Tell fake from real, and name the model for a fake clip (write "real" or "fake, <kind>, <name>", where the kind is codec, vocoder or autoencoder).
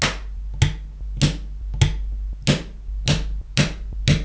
real